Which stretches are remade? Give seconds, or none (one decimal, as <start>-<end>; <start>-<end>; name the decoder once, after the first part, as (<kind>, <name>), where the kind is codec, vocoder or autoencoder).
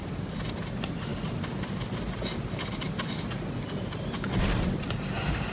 none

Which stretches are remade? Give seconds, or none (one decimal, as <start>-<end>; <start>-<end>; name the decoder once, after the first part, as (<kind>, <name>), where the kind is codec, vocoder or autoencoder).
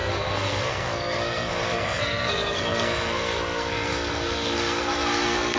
0.0-5.6 (codec, SNAC)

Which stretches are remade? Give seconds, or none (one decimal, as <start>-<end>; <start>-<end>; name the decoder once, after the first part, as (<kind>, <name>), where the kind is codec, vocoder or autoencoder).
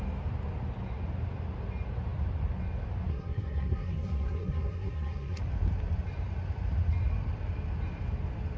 3.1-5.4 (codec, SNAC)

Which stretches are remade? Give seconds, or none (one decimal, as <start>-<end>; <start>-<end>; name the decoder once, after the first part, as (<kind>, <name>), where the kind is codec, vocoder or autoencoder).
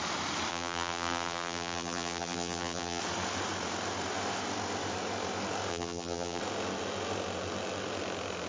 0.5-3.0 (vocoder, BigVGAN v2); 5.7-6.4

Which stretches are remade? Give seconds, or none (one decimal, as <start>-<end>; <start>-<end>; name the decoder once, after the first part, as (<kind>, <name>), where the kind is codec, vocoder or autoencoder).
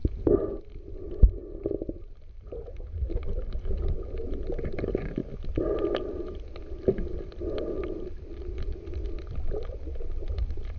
none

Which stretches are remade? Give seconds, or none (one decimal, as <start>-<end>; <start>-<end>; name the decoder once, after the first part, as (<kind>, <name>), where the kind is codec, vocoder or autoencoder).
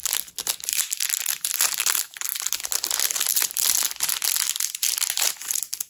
none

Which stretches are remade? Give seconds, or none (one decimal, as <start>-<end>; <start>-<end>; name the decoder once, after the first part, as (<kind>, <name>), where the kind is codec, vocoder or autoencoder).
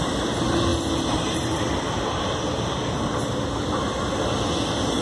none